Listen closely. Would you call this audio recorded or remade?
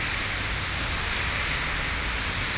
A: recorded